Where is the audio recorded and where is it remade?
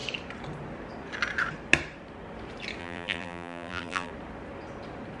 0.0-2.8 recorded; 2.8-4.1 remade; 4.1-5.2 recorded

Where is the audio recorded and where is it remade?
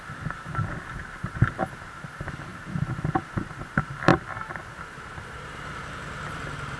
0.0-6.8 recorded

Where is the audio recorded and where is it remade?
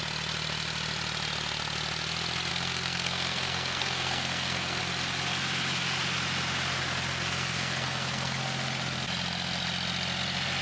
0.0-2.5 recorded; 2.5-4.8 remade; 4.8-7.1 recorded; 7.1-8.4 remade; 8.4-10.6 recorded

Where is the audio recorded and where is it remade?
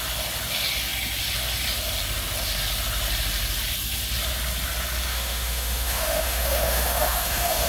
0.0-5.1 recorded; 5.1-7.7 remade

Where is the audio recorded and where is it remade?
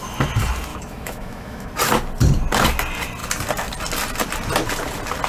0.0-0.7 recorded; 0.7-1.7 remade; 1.7-5.3 recorded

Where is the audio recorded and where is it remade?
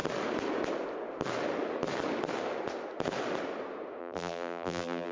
0.0-4.0 recorded; 4.0-5.1 remade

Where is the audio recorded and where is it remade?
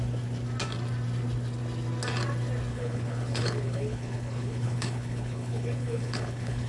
0.0-2.7 recorded; 2.7-6.7 remade